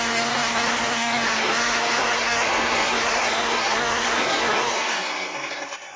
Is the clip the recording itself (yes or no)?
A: no